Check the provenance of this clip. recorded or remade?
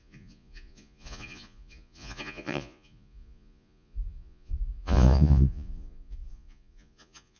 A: remade